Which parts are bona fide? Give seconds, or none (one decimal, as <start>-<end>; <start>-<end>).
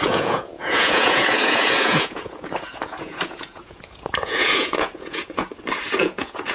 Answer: 5.5-6.0